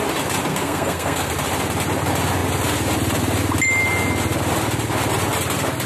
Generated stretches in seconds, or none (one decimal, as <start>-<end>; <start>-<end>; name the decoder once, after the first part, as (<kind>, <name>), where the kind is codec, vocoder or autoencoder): 0.5-1.3 (codec, SNAC)